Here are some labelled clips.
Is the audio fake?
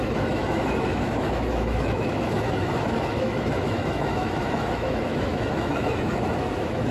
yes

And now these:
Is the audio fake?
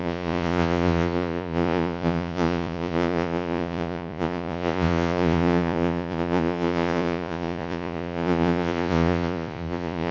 yes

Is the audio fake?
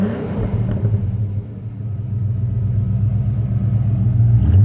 no